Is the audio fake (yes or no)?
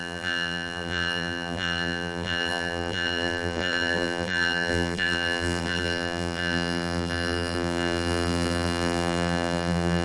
yes